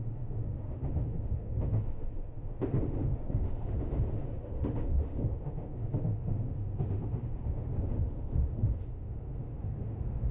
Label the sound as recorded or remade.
remade